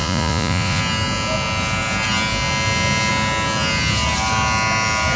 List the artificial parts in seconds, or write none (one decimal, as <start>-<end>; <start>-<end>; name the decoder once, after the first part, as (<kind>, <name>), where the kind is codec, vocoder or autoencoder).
0.0-0.8 (vocoder, Vocos)